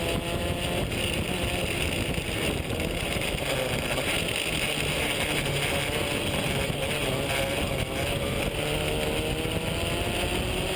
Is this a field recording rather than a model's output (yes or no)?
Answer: yes